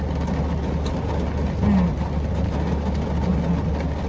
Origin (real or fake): real